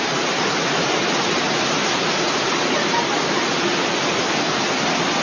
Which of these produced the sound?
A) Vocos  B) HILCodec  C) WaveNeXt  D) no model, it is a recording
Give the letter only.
D